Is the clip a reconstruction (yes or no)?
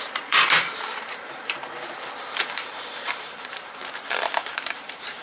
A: yes